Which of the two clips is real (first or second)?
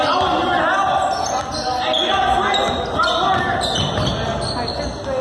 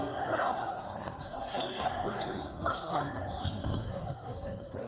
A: first